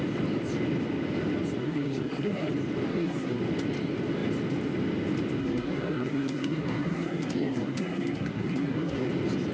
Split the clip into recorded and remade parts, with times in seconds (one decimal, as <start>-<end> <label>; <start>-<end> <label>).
0.0-1.6 recorded; 1.6-2.5 remade; 2.5-2.9 recorded; 2.9-3.4 remade; 3.4-5.4 recorded; 5.4-9.1 remade; 9.1-9.5 recorded